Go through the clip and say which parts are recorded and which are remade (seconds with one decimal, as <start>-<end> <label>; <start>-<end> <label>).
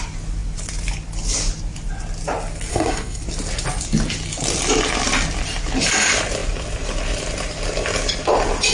0.0-2.7 recorded; 2.7-3.2 remade; 3.2-8.7 recorded